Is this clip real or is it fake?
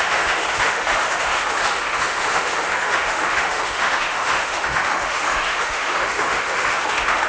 fake